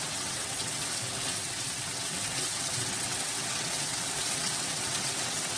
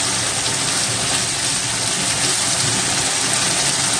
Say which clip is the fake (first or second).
first